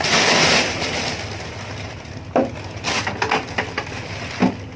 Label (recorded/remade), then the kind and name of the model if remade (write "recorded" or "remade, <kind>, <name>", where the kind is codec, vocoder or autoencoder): recorded